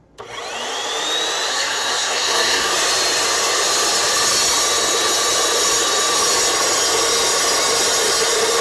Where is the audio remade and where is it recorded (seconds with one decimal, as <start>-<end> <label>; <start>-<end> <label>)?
0.0-1.5 recorded; 1.5-2.7 remade; 2.7-8.6 recorded

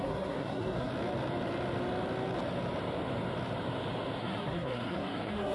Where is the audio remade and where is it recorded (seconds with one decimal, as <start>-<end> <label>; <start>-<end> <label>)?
0.0-0.9 remade; 0.9-4.2 recorded; 4.2-5.5 remade

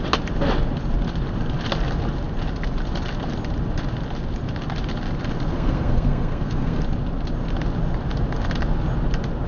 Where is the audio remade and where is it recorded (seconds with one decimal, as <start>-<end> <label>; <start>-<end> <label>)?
0.0-5.5 recorded; 5.5-6.8 remade; 6.8-9.5 recorded